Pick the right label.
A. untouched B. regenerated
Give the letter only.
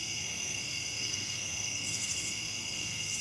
B